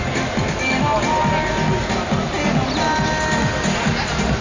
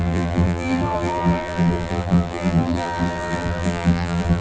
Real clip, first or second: first